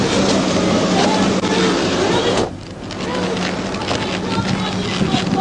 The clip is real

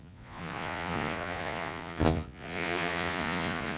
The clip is fake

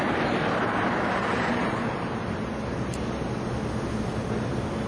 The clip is real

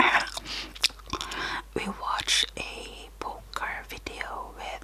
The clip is real